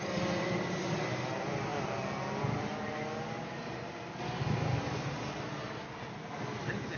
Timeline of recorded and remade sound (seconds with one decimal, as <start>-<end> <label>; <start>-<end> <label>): 0.0-7.0 recorded